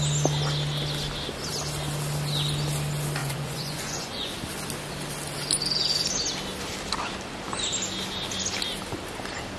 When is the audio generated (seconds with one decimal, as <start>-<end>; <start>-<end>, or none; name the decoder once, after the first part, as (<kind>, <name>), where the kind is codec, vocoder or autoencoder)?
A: 3.2-4.3 (vocoder, Vocos)